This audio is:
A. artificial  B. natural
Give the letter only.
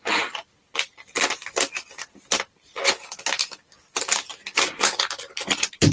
B